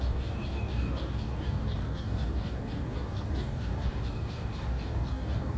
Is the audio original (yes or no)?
no